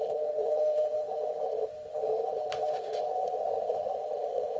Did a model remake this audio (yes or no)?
yes